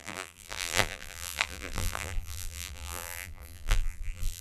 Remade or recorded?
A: remade